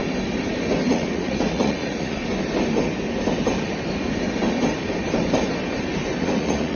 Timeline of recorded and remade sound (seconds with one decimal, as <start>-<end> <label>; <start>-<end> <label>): 0.0-0.9 recorded; 0.9-2.2 remade; 2.2-6.2 recorded; 6.2-6.8 remade